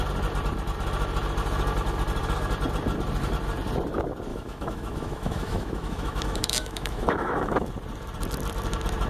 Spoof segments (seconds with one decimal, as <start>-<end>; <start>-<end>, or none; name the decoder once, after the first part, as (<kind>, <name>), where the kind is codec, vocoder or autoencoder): 4.3-7.7 (autoencoder, DAC-VAE)